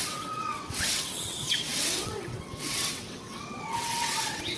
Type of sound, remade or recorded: remade